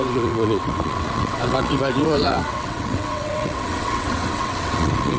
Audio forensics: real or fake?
fake